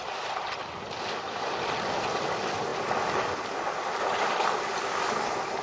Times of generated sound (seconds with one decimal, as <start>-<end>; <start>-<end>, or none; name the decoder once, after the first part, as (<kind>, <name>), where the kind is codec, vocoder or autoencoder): none